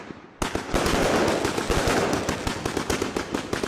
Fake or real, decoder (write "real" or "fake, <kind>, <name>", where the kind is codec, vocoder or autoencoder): real